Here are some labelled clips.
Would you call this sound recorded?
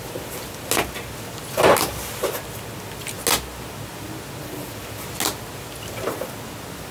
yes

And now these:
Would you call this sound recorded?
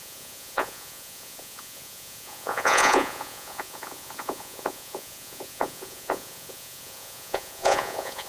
no